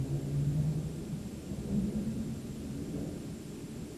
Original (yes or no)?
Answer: yes